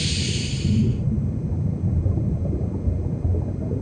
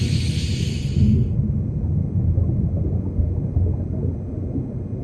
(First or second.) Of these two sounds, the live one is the second